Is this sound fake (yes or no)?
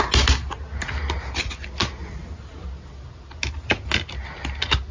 no